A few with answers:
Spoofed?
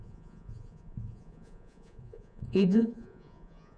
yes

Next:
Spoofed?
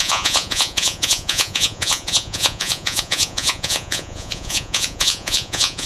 yes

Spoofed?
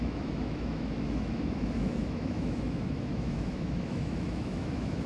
yes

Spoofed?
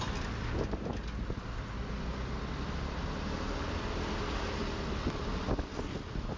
no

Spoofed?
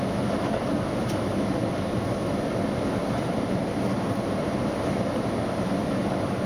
no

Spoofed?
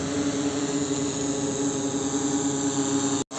no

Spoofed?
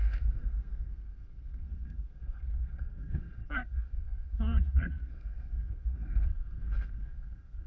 yes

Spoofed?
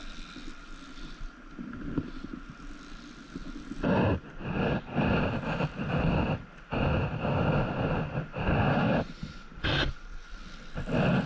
no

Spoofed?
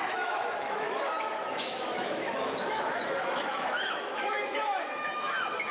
yes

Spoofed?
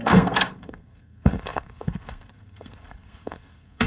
yes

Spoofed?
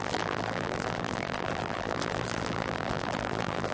yes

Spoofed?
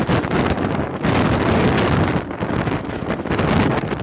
no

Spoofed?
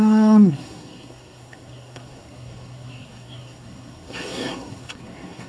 yes